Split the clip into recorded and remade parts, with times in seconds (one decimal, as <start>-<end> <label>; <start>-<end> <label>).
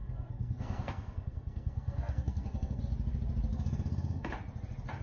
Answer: 0.0-2.8 remade; 2.8-3.5 recorded; 3.5-4.3 remade; 4.3-5.0 recorded